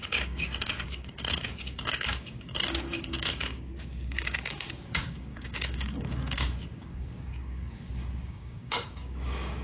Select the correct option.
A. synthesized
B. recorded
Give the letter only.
A